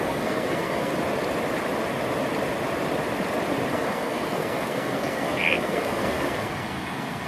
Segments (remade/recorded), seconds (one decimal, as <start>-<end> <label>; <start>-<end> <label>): 0.0-0.9 remade; 0.9-3.7 recorded; 3.7-7.3 remade